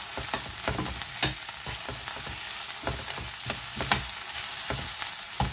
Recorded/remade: recorded